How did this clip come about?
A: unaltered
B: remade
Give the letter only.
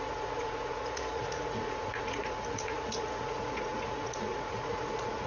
B